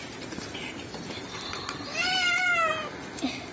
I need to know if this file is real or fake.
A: real